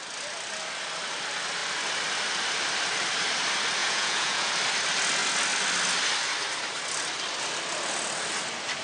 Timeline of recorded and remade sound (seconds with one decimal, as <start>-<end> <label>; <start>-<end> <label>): 0.0-3.8 recorded; 3.8-4.5 remade; 4.5-8.8 recorded